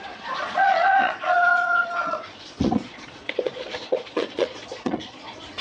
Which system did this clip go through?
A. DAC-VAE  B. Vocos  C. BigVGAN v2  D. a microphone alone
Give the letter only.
B